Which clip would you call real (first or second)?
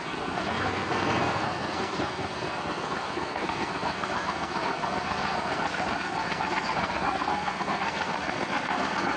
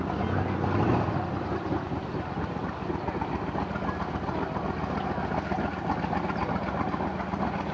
second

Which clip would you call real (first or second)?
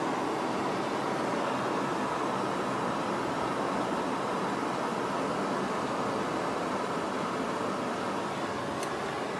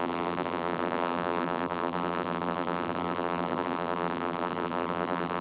first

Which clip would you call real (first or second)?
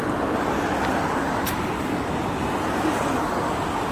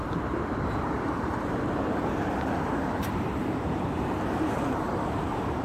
first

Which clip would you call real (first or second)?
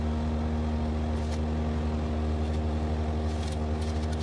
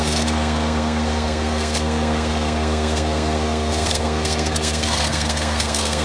first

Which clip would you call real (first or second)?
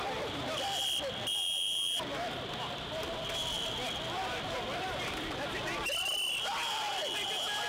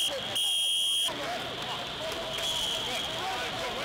second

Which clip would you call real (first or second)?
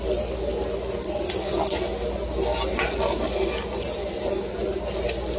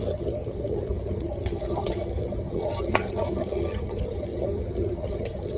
first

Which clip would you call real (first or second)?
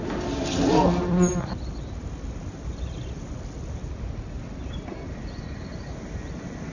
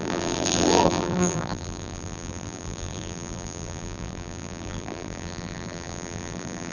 first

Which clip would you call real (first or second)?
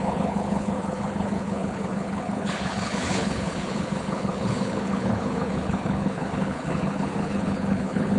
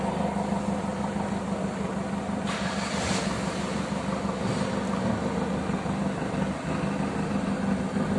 second